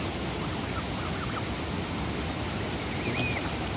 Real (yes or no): yes